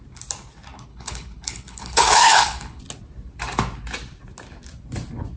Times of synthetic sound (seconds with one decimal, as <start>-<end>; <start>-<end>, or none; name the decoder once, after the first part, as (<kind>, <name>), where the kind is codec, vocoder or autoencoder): 0.9-2.8 (codec, HILCodec)